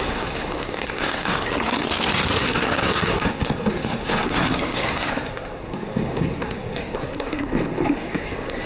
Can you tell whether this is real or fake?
fake